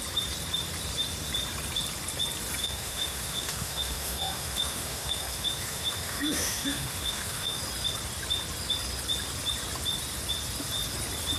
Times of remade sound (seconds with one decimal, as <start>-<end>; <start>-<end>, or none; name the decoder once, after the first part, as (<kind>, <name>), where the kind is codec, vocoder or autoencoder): 2.6-7.6 (autoencoder, DAC-VAE)